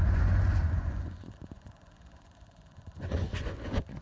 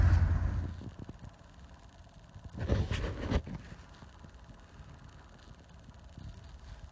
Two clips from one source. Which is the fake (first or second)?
first